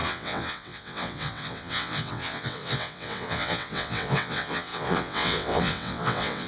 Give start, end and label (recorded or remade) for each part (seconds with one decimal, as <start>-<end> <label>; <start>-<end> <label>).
0.0-6.5 remade